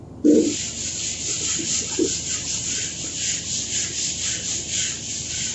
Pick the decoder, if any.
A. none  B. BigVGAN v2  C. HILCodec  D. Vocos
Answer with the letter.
A